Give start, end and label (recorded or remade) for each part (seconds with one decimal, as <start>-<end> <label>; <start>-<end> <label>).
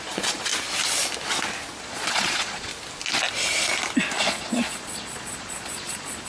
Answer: 0.0-0.5 remade; 0.5-1.8 recorded; 1.8-2.7 remade; 2.7-4.2 recorded; 4.2-6.3 remade